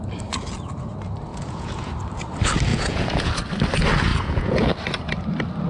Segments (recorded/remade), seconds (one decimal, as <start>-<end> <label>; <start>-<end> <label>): 0.0-1.3 recorded; 1.3-1.9 remade; 1.9-2.7 recorded; 2.7-3.3 remade; 3.3-4.1 recorded; 4.1-4.7 remade; 4.7-5.7 recorded